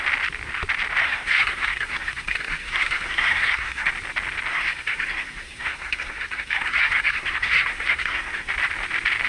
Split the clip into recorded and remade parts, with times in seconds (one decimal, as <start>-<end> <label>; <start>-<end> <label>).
0.0-1.0 recorded; 1.0-3.9 remade; 3.9-4.5 recorded; 4.5-8.5 remade; 8.5-9.3 recorded